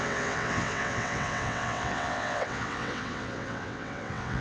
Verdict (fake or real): fake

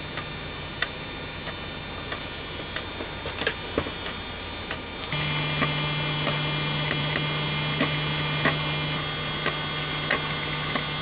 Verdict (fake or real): real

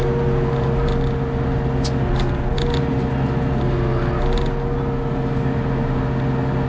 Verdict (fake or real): real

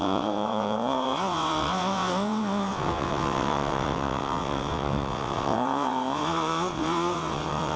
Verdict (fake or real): fake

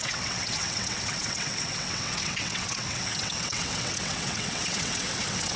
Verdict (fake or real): fake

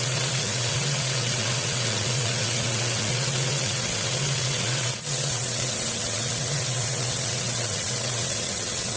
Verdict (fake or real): fake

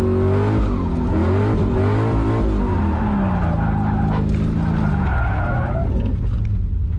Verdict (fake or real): real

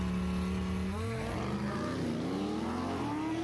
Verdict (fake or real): real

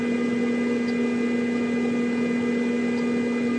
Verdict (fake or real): real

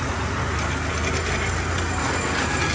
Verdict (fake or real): real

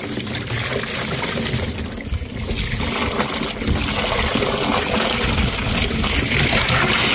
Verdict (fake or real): real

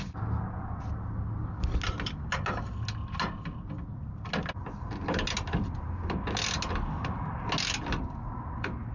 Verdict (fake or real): real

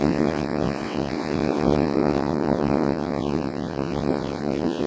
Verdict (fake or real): fake